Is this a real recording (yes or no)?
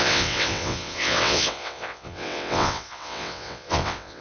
no